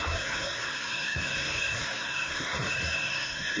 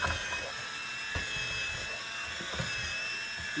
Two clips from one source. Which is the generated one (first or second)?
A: first